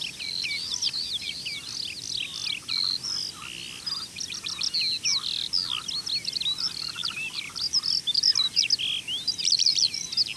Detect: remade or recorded recorded